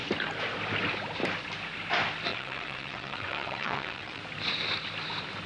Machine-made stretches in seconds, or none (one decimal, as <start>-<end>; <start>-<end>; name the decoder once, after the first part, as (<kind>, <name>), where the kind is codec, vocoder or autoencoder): 2.3-4.2 (vocoder, WaveNeXt)